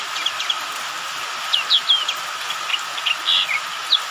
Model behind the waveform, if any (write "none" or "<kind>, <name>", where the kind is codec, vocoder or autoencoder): none